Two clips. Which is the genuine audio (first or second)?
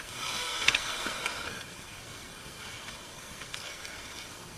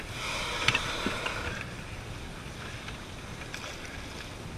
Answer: second